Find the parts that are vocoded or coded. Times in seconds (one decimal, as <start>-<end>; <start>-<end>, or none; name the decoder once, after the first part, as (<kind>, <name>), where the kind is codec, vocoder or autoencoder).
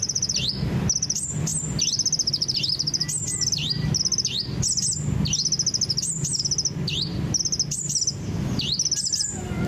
none